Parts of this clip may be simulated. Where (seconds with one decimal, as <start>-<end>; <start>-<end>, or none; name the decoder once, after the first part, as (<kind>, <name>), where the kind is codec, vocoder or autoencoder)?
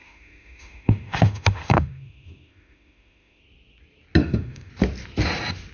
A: 0.0-3.4 (autoencoder, DAC-VAE); 4.2-4.7